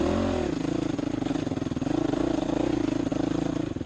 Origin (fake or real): real